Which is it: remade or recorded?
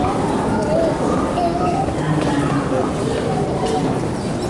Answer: recorded